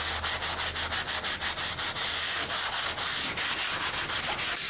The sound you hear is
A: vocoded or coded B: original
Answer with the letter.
B